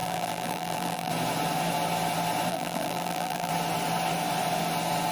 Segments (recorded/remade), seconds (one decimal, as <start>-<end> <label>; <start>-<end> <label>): 0.0-1.1 remade; 1.1-2.5 recorded; 2.5-3.5 remade; 3.5-5.1 recorded